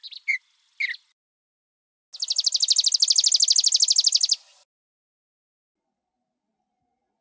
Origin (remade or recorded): recorded